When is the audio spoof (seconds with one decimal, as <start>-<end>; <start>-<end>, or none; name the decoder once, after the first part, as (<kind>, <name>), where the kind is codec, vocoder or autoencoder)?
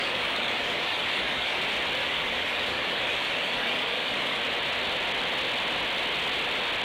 0.0-1.6 (codec, DAC); 2.0-4.4